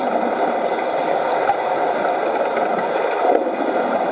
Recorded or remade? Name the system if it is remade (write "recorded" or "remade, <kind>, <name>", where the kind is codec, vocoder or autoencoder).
recorded